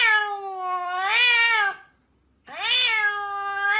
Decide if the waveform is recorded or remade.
recorded